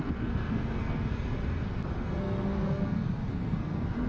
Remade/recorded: remade